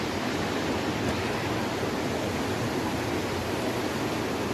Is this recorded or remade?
recorded